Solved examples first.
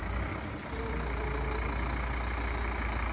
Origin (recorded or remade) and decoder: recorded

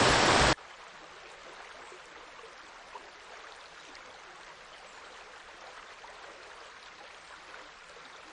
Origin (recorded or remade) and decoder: recorded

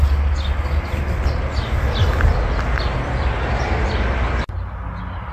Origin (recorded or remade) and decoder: recorded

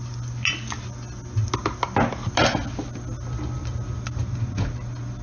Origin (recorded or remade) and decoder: recorded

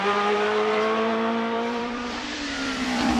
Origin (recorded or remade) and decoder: remade, vocoder, BigVGAN v2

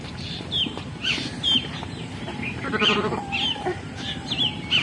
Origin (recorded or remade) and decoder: remade, vocoder, BigVGAN v2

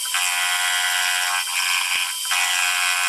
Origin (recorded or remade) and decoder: recorded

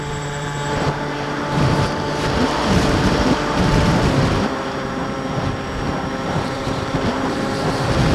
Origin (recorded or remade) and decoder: remade, vocoder, BigVGAN v2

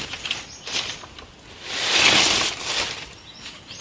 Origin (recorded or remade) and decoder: recorded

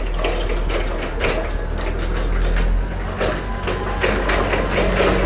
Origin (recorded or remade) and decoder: recorded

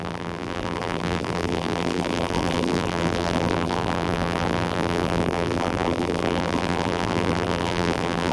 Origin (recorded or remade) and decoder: remade, vocoder, BigVGAN v2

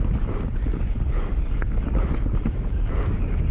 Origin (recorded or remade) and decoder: recorded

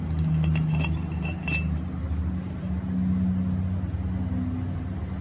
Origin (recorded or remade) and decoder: recorded